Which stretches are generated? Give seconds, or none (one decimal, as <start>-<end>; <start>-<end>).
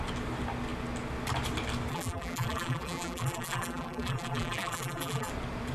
1.9-5.3